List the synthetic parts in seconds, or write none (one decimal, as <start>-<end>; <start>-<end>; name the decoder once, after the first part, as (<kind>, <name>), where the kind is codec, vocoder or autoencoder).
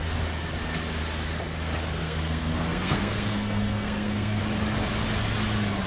2.0-4.4 (codec, SNAC)